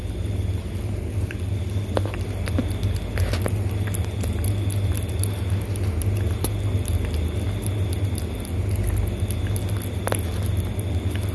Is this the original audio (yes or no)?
yes